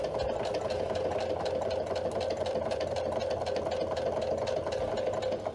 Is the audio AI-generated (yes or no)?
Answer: no